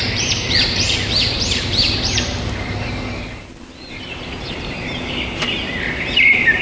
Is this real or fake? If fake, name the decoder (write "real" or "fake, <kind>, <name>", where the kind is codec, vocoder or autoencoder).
fake, vocoder, BigVGAN v2